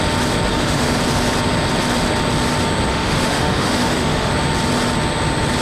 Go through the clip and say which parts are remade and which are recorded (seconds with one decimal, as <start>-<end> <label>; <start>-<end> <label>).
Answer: 0.0-0.5 recorded; 0.5-1.0 remade; 1.0-2.9 recorded; 2.9-4.3 remade; 4.3-5.6 recorded